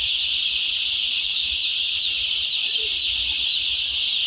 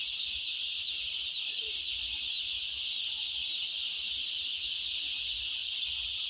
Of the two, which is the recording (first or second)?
second